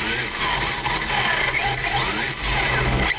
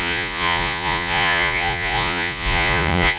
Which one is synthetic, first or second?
second